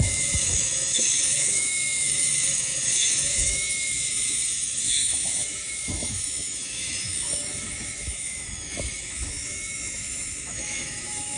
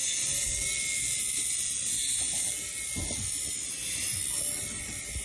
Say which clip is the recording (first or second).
second